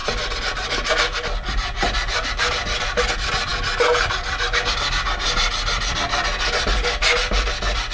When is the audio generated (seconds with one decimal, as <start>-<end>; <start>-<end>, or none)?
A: none